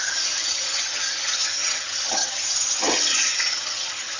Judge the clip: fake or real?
fake